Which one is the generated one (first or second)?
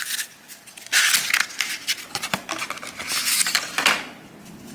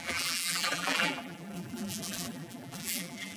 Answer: second